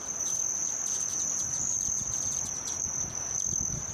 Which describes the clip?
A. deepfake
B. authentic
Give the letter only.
B